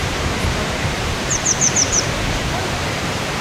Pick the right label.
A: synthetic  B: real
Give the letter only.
A